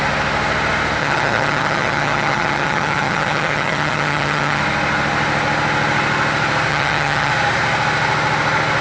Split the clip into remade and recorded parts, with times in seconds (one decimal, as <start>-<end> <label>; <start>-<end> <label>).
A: 0.0-1.0 recorded; 1.0-4.6 remade; 4.6-6.7 recorded; 6.7-7.3 remade; 7.3-8.8 recorded